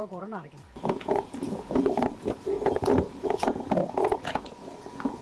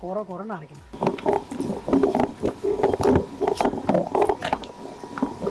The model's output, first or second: first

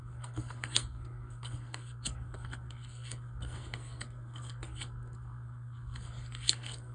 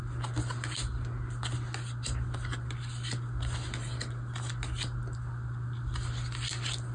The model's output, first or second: first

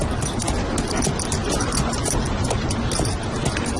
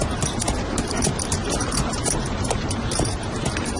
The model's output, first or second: second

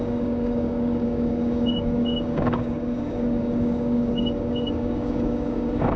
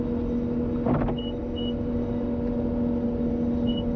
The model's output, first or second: first